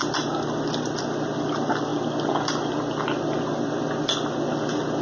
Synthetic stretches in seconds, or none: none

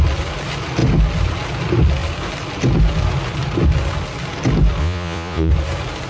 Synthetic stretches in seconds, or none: 4.8-5.5 (vocoder, Vocos)

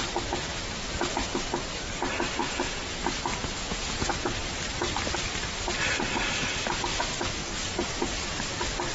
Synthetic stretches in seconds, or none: 2.4-3.0 (vocoder, Vocos); 3.4-4.1

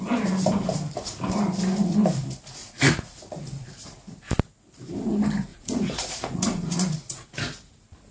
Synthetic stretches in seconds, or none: 2.6-4.0 (vocoder, Vocos); 5.5-7.3